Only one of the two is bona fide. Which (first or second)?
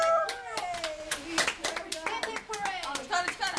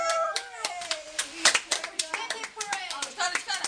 first